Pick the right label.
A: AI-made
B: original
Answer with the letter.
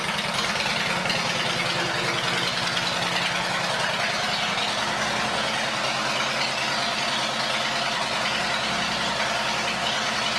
B